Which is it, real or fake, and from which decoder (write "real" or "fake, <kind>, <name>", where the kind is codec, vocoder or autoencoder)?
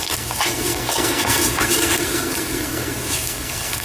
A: fake, codec, SNAC